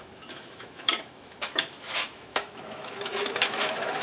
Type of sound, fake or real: fake